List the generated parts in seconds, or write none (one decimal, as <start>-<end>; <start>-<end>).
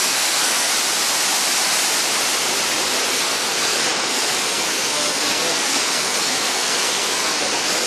0.0-0.7; 3.1-7.9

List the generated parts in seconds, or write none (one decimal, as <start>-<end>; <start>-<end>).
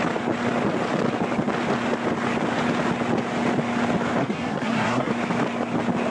4.2-5.1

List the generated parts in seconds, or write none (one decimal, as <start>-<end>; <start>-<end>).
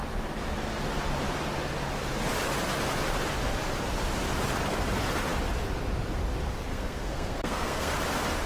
6.7-7.9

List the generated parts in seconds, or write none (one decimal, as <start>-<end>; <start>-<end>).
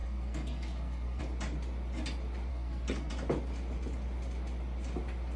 0.0-1.2; 2.5-3.1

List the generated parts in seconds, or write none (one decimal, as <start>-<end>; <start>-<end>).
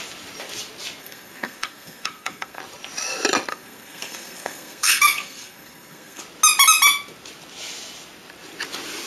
1.0-2.6; 3.5-6.2